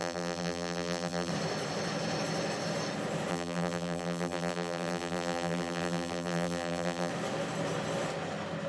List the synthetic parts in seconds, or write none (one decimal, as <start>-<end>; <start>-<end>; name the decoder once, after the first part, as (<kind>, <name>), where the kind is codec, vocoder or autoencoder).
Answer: 0.0-1.3 (vocoder, BigVGAN v2); 3.3-7.1